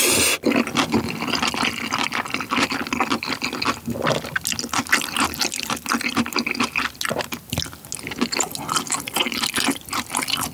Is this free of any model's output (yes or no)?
yes